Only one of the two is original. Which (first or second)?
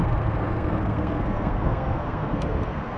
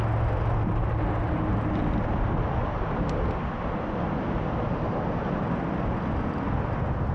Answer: second